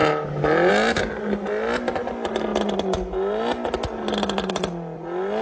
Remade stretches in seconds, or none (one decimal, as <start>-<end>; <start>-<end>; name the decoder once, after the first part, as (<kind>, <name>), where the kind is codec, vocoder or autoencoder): none